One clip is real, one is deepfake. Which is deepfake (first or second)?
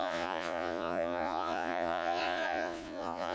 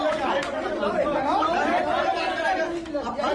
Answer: first